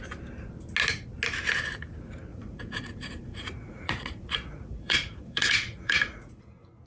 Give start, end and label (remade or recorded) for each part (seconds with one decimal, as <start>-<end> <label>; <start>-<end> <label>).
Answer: 0.0-2.3 recorded; 2.3-6.4 remade; 6.4-6.9 recorded